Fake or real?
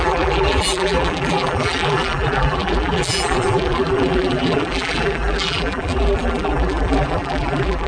fake